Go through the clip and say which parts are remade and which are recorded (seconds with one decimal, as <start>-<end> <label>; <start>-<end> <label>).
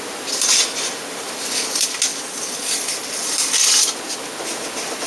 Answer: 0.0-5.1 recorded